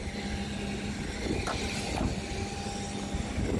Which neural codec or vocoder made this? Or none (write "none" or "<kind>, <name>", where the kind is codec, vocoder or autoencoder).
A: none